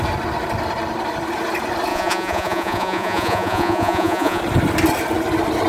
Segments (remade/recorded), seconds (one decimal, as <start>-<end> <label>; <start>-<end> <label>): 0.0-1.9 recorded; 1.9-4.4 remade; 4.4-5.7 recorded